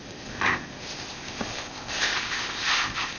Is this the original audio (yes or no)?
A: no